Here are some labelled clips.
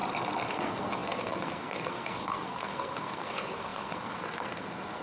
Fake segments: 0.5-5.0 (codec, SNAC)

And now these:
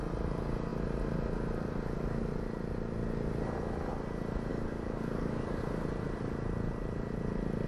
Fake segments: 4.5-5.6 (codec, DAC)

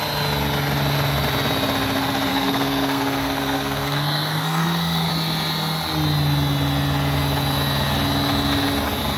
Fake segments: 2.3-5.1 (codec, SNAC)